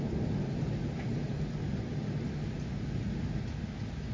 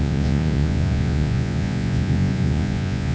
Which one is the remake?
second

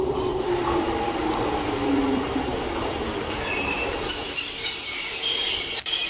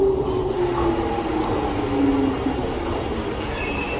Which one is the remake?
first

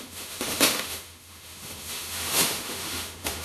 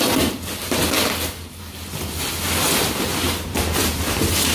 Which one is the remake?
first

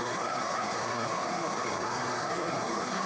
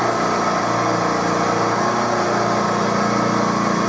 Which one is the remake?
first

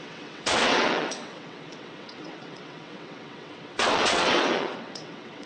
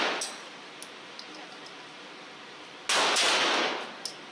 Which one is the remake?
first